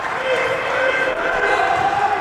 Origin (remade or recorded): remade